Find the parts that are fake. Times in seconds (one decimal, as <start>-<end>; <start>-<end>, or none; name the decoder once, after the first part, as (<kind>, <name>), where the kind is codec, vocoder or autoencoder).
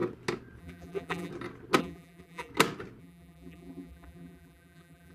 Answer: 0.6-1.3 (vocoder, BigVGAN v2); 1.8-2.5; 3.0-5.1